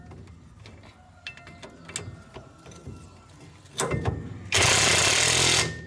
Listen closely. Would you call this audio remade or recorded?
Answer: recorded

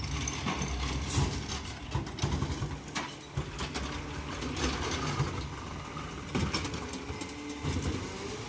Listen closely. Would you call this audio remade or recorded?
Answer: recorded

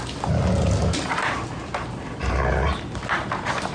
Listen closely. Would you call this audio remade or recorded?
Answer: recorded